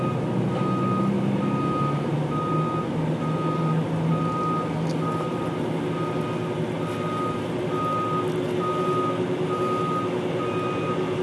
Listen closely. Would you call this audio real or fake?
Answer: real